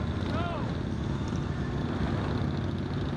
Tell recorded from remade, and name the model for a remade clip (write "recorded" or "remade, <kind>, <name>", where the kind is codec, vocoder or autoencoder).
recorded